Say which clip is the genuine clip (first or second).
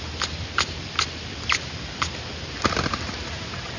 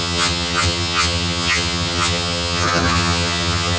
first